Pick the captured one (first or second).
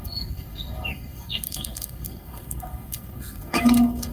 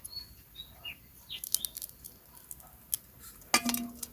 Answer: second